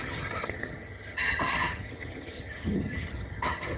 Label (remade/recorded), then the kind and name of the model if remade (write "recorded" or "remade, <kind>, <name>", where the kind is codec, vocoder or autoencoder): remade, vocoder, HiFi-GAN